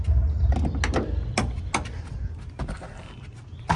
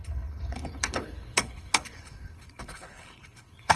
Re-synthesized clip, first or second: second